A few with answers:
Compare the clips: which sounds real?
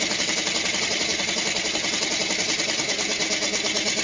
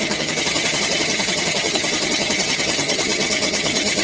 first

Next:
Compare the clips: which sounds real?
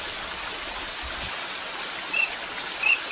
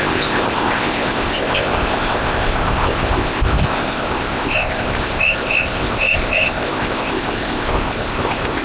first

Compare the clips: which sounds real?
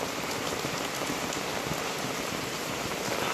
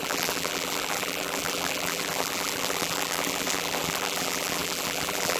first